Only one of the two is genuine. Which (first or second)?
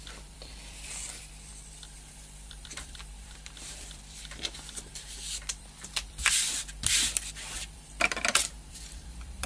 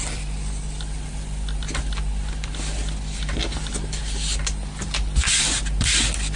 second